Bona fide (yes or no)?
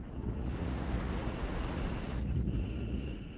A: no